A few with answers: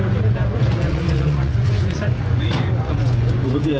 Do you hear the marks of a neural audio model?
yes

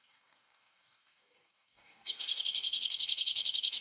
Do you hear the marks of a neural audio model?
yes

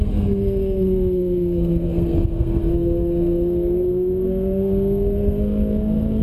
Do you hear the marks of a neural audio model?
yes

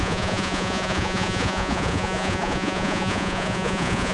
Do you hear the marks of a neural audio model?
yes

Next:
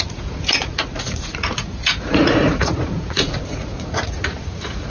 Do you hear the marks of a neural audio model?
yes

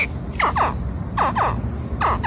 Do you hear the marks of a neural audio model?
no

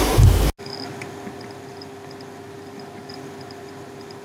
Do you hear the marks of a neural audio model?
no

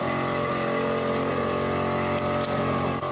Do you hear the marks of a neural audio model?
no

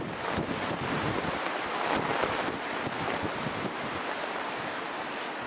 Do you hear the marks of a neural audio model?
yes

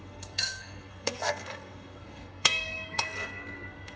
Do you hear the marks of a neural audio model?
yes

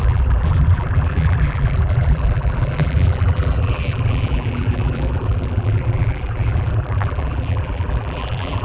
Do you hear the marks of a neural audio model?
yes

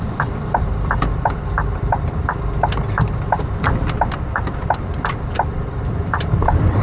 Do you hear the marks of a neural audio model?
yes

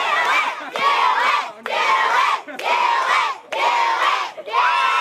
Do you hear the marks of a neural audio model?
no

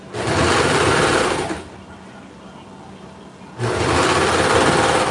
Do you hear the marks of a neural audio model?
no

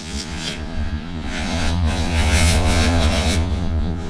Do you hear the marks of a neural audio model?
yes